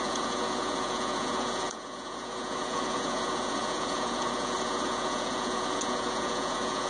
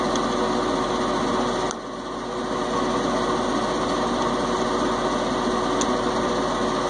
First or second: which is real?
second